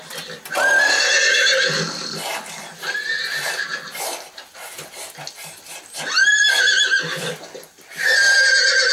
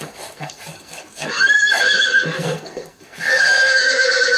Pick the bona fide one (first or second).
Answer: first